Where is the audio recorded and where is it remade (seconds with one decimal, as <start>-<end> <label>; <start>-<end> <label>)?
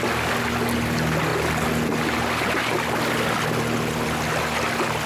0.0-5.1 recorded